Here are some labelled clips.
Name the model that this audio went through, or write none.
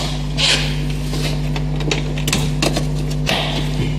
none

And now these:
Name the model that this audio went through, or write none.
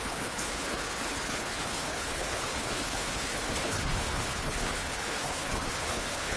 codec, HILCodec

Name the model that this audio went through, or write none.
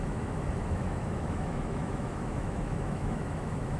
autoencoder, DAC-VAE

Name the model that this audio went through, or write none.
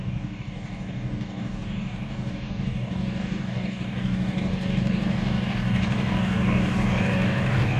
codec, DAC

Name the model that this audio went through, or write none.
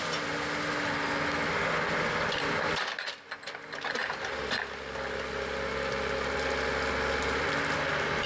none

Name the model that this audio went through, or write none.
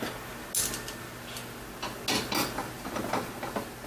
none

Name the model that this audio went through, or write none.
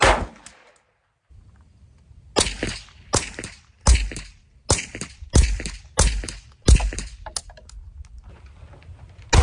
none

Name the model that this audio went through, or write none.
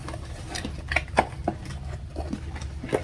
none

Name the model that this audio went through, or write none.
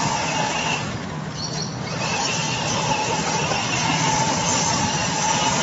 none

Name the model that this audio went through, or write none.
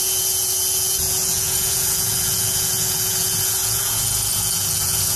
vocoder, Vocos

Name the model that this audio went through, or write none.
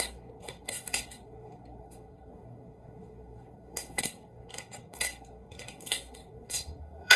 codec, SNAC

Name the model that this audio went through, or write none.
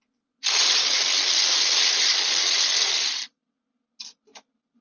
none